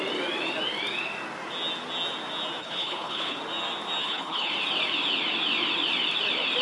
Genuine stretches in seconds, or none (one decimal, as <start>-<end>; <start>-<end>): 0.0-2.6; 3.4-4.0; 4.5-6.6